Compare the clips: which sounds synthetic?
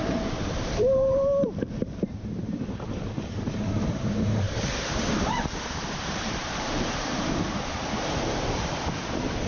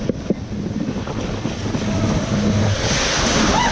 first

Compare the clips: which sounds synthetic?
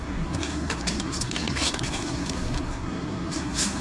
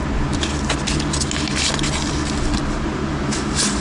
first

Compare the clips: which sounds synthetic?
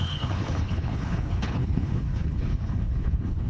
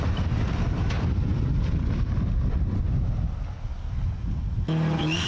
first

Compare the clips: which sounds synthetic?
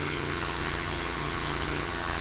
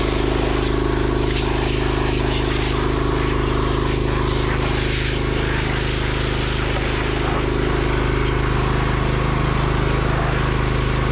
first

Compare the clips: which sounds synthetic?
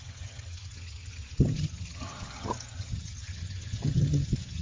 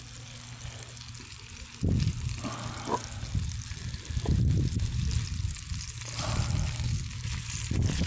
first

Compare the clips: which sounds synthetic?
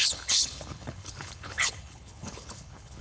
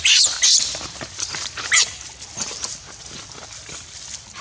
first